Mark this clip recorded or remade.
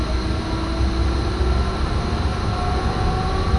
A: recorded